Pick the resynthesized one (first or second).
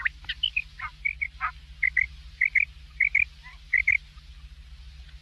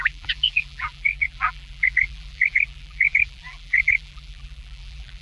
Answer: second